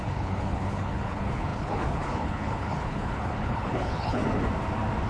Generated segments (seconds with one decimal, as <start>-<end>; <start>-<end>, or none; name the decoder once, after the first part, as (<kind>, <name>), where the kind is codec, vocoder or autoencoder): 0.0-4.2 (codec, HILCodec)